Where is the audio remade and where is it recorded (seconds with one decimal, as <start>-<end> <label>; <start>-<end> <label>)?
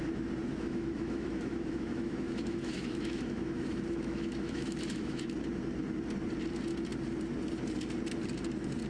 0.0-0.5 recorded; 0.5-5.2 remade; 5.2-8.9 recorded